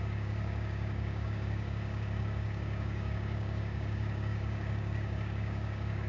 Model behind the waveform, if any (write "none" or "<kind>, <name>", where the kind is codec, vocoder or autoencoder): codec, DAC